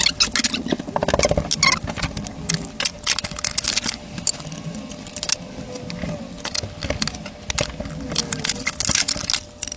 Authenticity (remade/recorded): recorded